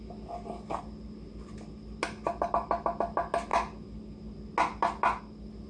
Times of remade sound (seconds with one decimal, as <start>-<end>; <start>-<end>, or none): none

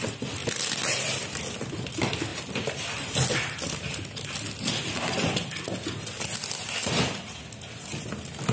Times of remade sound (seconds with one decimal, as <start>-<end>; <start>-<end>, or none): none

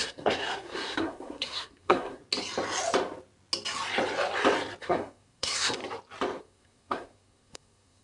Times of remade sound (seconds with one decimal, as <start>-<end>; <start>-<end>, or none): 0.0-2.2; 4.8-5.8; 6.4-8.0

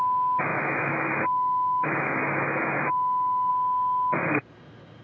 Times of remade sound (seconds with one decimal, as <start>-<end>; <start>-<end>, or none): 0.5-3.5

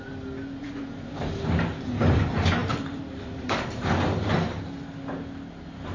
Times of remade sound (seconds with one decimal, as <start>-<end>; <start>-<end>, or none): 0.6-1.2; 2.6-4.7

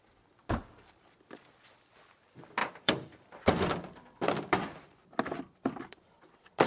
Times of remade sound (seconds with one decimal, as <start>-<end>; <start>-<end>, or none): 2.6-6.7

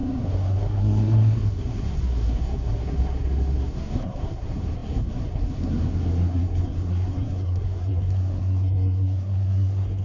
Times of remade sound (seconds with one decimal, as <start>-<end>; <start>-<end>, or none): 0.0-10.0